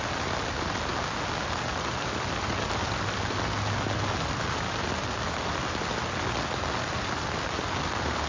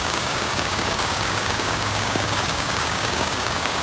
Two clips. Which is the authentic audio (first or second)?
first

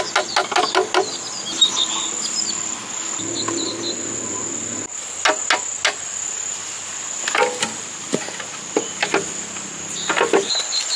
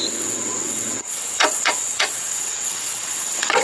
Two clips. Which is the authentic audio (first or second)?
first